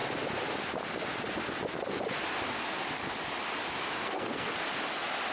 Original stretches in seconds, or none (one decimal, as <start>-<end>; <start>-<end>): 0.0-4.0; 4.5-5.3